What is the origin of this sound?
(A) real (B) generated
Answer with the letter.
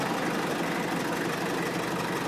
A